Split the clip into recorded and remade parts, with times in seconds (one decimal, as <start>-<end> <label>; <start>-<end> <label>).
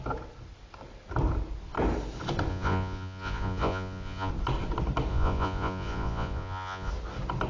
0.0-2.5 recorded; 2.5-4.3 remade; 4.3-5.1 recorded; 5.1-6.9 remade; 6.9-7.5 recorded